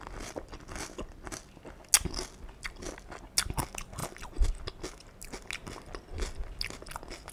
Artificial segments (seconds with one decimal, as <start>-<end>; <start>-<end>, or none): none

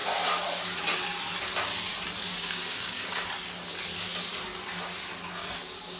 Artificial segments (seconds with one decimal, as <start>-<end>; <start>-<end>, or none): 2.3-3.3

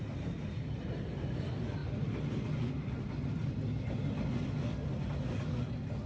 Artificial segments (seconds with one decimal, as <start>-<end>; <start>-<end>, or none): none

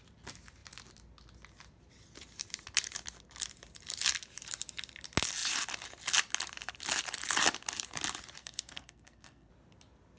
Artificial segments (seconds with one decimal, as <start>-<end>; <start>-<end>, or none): 8.4-9.5

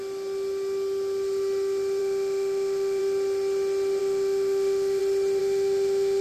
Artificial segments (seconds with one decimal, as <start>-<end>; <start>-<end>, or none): 2.0-3.0; 4.0-5.0; 5.4-6.2